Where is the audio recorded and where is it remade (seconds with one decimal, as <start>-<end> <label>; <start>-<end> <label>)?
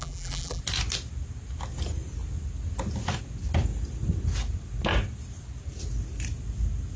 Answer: 0.0-0.6 remade; 0.6-7.0 recorded